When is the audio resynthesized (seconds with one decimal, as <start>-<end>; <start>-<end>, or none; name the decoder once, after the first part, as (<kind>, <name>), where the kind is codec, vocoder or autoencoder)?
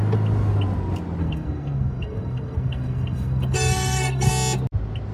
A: 1.2-4.3 (codec, SNAC)